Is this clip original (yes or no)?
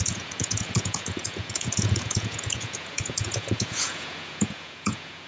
no